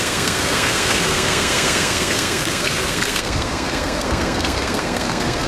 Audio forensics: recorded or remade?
remade